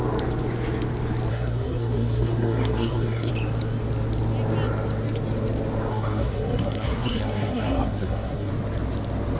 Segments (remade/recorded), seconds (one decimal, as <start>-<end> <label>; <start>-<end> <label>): 0.0-1.3 recorded; 1.3-3.3 remade; 3.3-5.9 recorded; 5.9-8.5 remade; 8.5-9.4 recorded